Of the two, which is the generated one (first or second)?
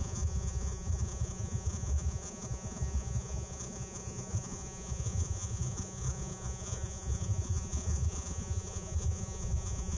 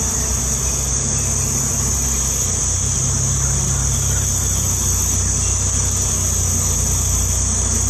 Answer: first